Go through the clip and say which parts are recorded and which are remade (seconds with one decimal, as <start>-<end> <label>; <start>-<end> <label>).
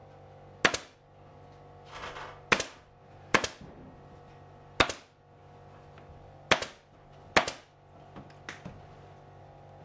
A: 0.0-9.8 recorded